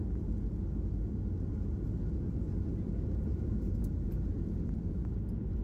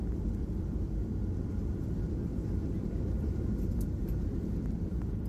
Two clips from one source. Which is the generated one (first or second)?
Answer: second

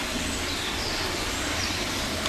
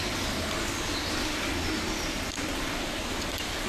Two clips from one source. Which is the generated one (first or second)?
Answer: first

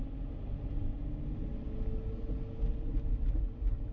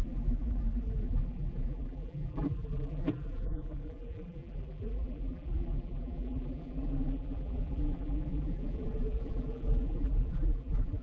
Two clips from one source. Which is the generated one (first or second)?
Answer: second